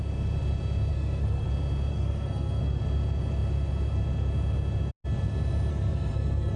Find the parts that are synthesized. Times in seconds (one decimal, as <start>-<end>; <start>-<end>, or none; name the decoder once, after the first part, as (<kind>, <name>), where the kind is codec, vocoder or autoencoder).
0.9-1.5 (codec, SNAC); 1.9-2.8; 5.7-6.6